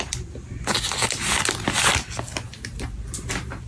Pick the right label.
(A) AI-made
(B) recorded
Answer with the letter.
B